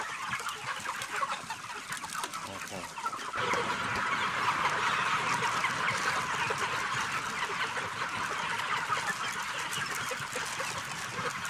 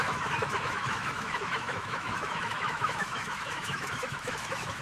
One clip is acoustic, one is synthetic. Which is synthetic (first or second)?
second